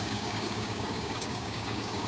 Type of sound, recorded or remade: remade